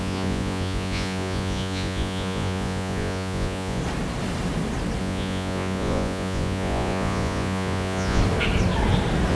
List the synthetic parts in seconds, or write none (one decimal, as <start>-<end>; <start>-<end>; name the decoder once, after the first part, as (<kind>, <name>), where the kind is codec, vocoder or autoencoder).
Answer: 0.0-3.8 (vocoder, Vocos); 5.0-8.2